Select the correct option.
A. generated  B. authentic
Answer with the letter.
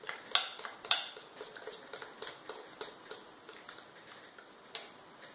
B